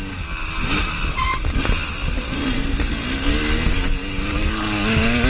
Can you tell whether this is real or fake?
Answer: real